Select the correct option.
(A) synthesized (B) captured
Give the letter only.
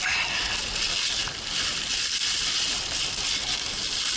B